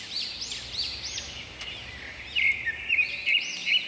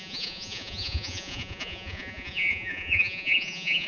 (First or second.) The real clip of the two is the first